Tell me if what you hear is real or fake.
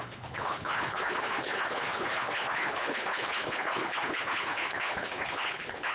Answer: fake